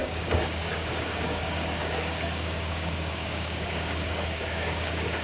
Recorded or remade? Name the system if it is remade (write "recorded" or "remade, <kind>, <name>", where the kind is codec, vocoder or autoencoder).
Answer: remade, codec, DAC